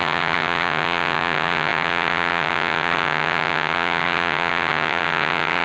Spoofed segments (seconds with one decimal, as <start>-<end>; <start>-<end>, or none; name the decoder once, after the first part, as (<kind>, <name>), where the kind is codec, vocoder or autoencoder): 0.0-5.6 (vocoder, HiFi-GAN)